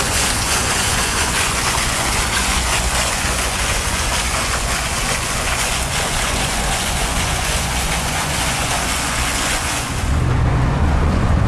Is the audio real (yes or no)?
no